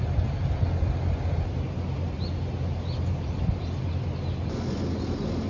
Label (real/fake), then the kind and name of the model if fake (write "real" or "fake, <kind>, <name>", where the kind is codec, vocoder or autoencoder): real